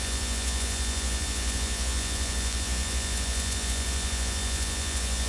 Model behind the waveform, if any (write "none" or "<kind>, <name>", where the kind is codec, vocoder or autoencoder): vocoder, Vocos